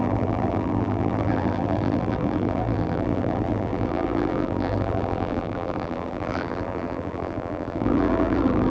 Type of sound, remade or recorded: remade